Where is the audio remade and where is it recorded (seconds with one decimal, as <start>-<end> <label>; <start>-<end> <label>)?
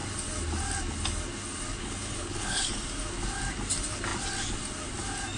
0.0-1.8 recorded; 1.8-2.6 remade; 2.6-5.4 recorded